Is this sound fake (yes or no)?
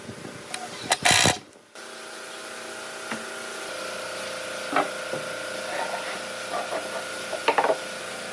no